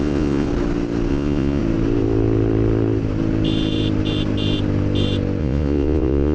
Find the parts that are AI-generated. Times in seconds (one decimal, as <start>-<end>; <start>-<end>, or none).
0.0-0.5; 1.1-1.6; 5.4-6.3